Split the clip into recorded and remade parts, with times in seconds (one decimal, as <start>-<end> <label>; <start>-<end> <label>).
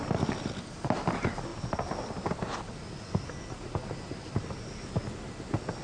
0.0-5.8 recorded